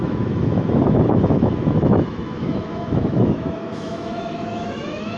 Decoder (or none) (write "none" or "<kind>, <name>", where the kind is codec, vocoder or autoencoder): autoencoder, DAC-VAE